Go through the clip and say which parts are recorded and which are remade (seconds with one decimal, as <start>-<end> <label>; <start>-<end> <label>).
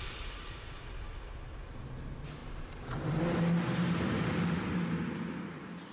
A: 0.0-2.4 remade; 2.4-5.4 recorded; 5.4-5.9 remade